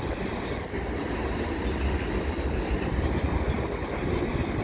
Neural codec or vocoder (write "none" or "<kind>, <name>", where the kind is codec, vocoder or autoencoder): none